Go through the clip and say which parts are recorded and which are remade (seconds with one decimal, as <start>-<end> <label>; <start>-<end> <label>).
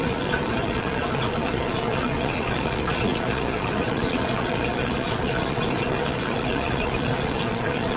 0.0-8.0 remade